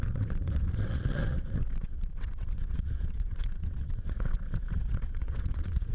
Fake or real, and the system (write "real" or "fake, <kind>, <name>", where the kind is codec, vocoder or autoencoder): fake, vocoder, WaveNeXt